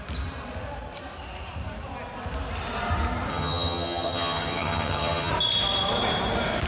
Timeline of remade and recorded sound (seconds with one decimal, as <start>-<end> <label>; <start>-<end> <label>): 0.0-3.3 recorded; 3.3-5.3 remade; 5.3-6.7 recorded